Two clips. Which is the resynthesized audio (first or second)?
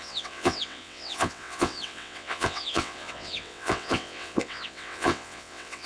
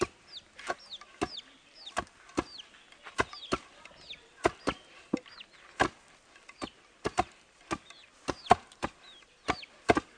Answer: first